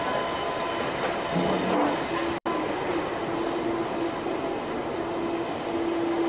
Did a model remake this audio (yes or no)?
no